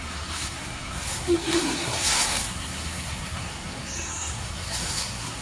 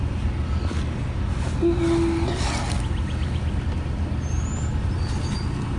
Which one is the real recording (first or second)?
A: second